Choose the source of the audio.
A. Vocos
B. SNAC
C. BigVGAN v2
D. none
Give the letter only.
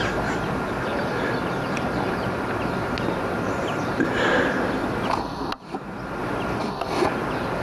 D